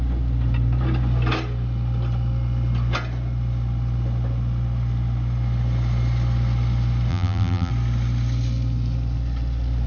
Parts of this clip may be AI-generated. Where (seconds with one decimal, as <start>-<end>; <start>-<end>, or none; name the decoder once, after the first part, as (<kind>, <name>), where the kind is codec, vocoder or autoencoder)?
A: 7.1-7.7 (vocoder, BigVGAN v2)